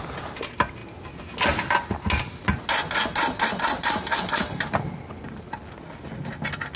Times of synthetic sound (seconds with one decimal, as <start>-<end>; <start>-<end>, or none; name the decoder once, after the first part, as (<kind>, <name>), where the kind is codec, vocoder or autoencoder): none